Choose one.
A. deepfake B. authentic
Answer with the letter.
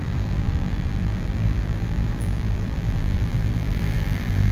A